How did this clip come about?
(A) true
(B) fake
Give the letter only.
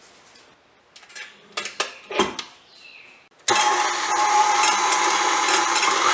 A